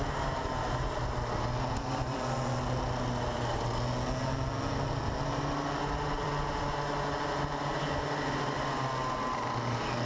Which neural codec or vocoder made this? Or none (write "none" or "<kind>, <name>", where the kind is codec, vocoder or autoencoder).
none